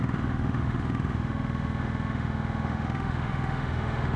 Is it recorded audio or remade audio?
remade